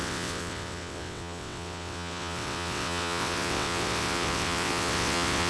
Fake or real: fake